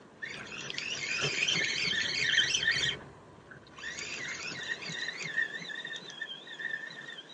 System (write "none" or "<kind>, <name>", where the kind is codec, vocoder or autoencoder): none